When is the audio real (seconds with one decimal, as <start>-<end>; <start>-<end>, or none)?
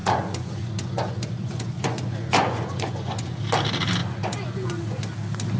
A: 3.4-4.0; 5.0-5.6